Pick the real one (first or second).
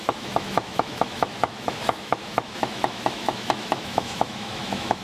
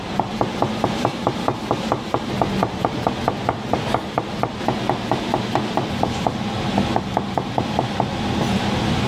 second